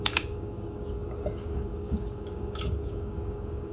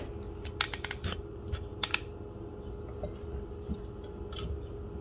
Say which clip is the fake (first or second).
first